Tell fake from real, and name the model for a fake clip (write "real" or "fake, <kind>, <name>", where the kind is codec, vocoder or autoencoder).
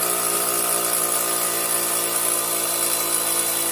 real